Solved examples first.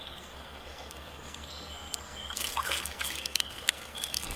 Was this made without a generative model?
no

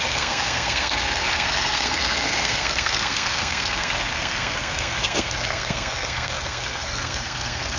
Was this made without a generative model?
no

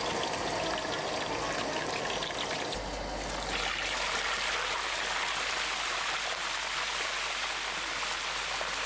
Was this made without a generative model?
yes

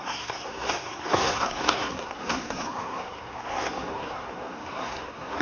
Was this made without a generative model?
no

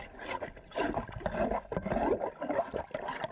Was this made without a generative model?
yes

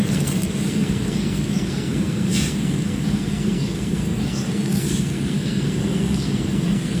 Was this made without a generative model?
no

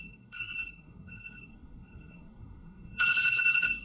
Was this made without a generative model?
no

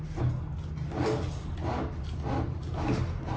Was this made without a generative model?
yes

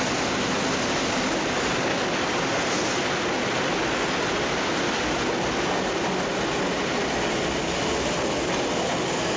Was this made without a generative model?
yes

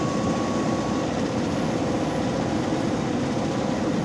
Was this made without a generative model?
yes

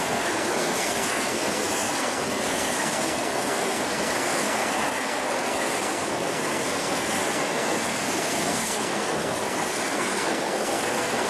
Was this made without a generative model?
no